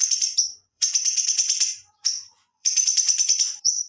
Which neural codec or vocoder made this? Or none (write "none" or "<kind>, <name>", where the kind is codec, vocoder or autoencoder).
vocoder, Vocos